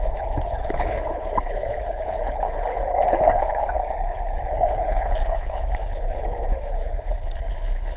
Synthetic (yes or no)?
yes